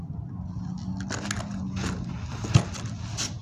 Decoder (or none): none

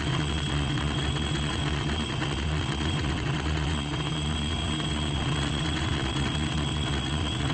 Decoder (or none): vocoder, WaveNeXt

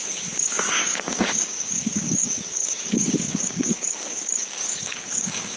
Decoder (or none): codec, DAC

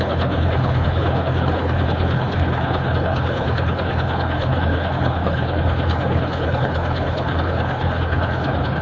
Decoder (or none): codec, HILCodec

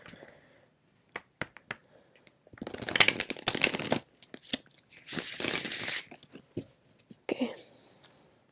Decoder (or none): none